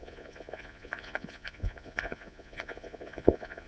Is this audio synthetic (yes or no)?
yes